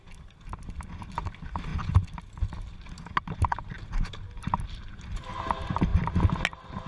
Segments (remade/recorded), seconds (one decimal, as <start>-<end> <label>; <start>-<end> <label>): 0.0-6.9 recorded